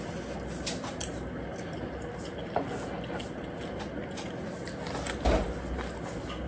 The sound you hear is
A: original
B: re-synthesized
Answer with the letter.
A